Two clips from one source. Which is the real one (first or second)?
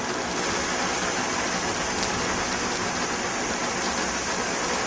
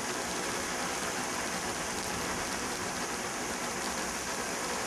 first